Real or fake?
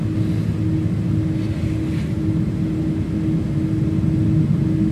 real